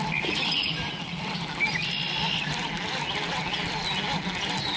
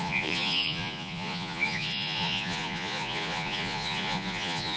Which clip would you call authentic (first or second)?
first